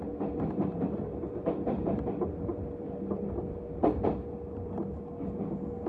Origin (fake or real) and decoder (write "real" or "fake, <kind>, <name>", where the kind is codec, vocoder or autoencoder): real